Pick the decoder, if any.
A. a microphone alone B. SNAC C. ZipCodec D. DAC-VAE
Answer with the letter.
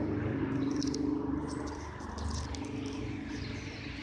A